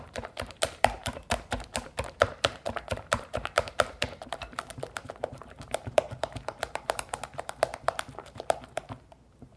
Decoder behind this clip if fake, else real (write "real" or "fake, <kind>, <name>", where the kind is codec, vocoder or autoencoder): fake, vocoder, BigVGAN v2